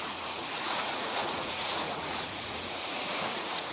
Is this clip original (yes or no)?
no